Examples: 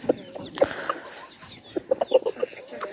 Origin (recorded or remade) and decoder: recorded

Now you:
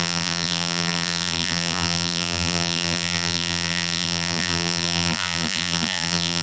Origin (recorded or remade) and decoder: remade, vocoder, BigVGAN v2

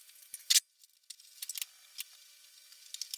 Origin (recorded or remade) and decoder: recorded